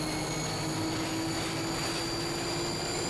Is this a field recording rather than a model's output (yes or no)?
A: yes